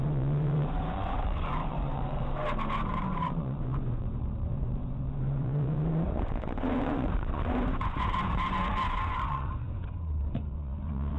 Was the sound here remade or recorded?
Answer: remade